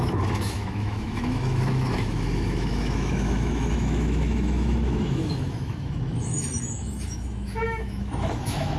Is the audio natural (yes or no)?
no